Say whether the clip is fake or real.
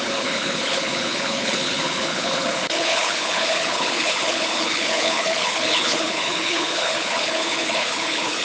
fake